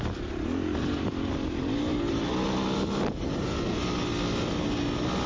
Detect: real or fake real